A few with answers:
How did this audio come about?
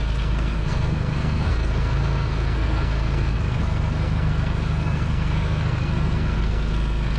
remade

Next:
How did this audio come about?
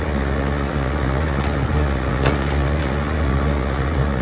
remade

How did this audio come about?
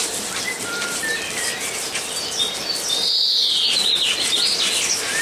recorded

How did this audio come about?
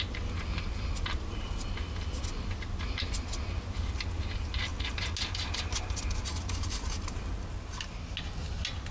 recorded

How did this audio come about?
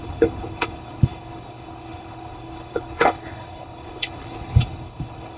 remade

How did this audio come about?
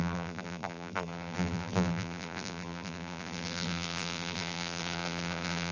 remade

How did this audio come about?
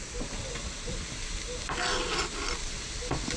recorded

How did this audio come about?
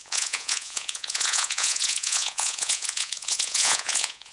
remade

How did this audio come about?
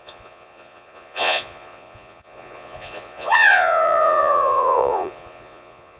remade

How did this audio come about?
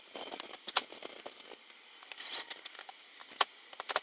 recorded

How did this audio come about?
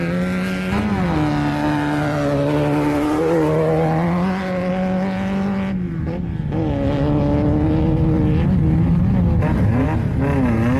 recorded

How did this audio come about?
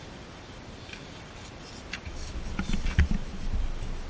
recorded